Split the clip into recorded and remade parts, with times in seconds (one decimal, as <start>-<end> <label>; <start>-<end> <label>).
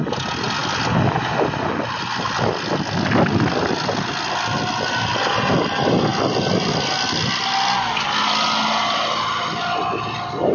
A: 0.0-10.5 recorded